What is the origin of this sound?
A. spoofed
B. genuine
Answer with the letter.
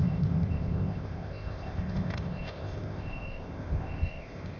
A